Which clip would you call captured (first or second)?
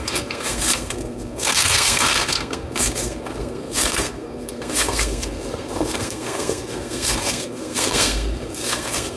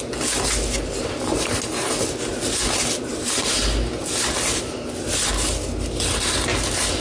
second